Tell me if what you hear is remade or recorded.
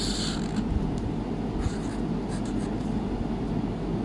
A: recorded